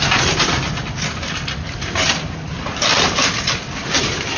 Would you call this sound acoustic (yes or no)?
yes